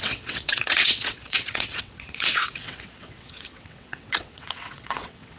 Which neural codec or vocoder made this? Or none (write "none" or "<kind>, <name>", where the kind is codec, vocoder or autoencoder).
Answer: vocoder, WaveNeXt